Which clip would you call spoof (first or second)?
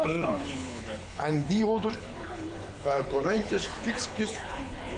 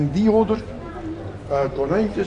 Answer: first